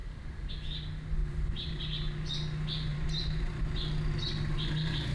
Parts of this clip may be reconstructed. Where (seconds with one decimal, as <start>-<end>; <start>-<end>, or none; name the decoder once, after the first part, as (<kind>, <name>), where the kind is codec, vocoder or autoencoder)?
0.0-0.5 (vocoder, BigVGAN v2); 1.2-1.8; 2.9-3.6